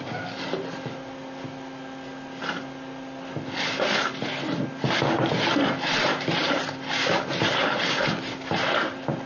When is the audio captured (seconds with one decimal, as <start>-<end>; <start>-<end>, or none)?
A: 0.0-9.3

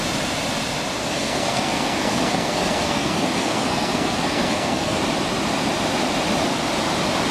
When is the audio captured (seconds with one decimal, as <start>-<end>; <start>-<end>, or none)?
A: 0.0-1.0; 5.0-7.3